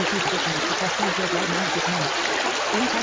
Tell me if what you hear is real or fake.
real